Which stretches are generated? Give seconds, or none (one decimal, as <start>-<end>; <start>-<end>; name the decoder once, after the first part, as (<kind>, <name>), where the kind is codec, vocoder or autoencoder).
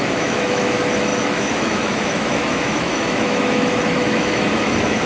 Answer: 0.0-5.1 (autoencoder, DAC-VAE)